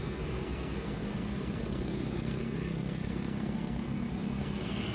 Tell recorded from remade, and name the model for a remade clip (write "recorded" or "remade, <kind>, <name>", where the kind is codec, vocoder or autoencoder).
remade, codec, SNAC